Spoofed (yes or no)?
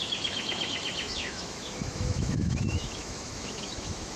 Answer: yes